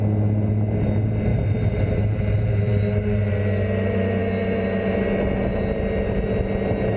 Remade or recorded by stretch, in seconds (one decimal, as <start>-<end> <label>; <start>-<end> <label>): 0.0-1.3 recorded; 1.3-3.3 remade; 3.3-7.0 recorded